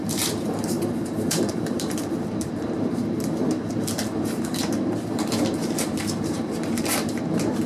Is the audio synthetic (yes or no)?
yes